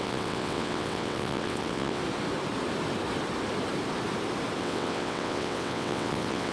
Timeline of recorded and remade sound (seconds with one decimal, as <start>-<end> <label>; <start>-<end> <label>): 0.0-2.0 remade; 2.0-4.6 recorded; 4.6-6.5 remade